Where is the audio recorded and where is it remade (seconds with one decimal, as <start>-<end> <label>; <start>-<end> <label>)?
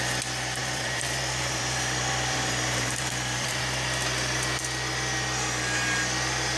0.0-0.6 recorded; 0.6-3.6 remade; 3.6-6.6 recorded